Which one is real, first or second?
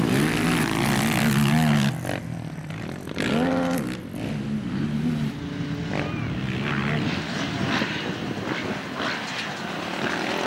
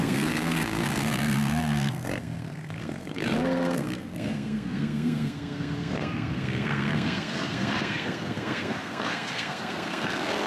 first